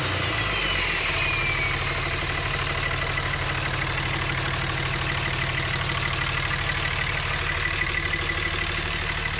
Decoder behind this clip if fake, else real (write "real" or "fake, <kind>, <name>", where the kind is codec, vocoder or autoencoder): real